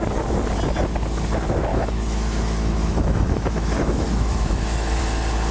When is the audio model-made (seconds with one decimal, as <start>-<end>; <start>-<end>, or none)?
1.7-5.0

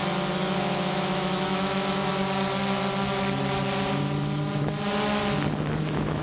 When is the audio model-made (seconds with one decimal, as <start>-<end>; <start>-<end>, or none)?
0.6-2.1; 5.8-6.2

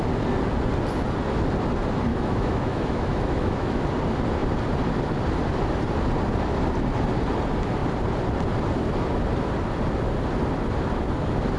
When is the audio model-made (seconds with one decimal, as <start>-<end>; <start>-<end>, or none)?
2.1-3.8

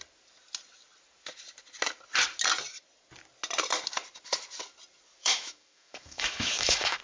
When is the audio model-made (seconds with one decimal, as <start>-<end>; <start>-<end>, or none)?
5.2-7.0

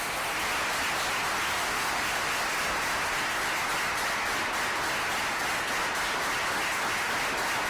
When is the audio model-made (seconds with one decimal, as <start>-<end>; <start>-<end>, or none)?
1.6-2.3

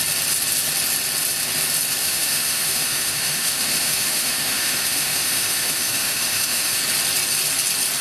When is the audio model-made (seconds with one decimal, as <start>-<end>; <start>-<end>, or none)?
2.0-6.8